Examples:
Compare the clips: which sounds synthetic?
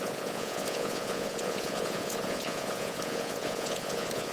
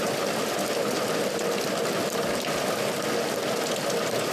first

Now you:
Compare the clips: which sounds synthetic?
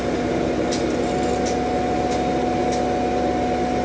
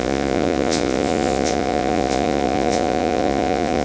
second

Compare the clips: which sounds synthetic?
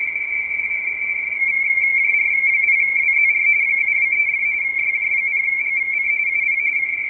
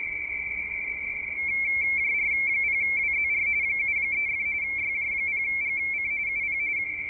first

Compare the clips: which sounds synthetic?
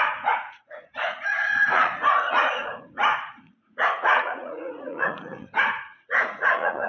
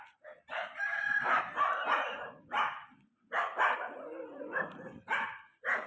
first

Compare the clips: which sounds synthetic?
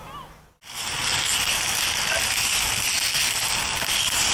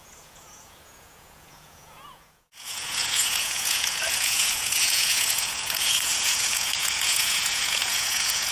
second